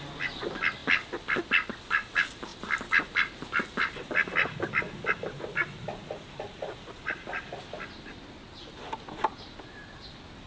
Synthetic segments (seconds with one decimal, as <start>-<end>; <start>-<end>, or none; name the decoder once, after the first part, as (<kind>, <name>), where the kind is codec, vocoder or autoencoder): none